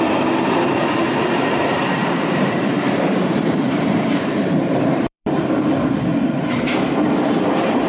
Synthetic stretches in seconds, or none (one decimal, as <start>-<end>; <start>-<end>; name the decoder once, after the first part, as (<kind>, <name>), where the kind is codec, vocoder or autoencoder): 2.0-5.4 (vocoder, BigVGAN v2)